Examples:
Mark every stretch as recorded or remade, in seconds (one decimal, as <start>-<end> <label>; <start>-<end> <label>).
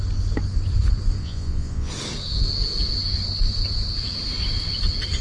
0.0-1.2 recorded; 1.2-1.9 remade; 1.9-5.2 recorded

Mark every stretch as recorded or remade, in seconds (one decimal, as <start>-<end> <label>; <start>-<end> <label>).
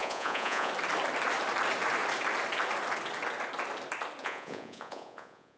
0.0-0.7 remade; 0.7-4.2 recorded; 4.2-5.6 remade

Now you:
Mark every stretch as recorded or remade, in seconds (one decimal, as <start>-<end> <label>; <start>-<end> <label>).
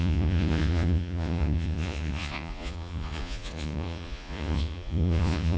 0.0-5.6 remade